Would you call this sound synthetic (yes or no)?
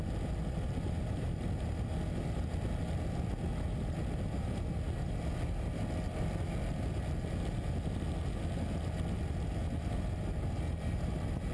no